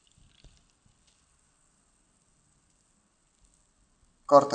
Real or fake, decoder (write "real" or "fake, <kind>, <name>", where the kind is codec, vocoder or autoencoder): real